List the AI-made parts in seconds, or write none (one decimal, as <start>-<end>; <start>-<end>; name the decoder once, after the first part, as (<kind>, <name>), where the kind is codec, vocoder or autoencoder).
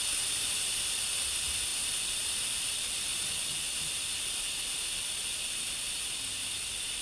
none